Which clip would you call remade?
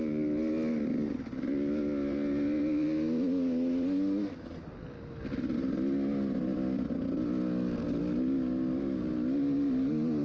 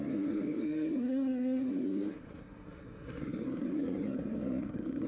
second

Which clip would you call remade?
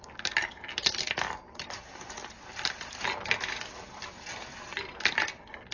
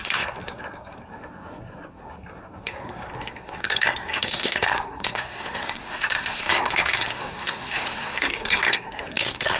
second